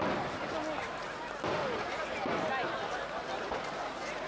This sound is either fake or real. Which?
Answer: real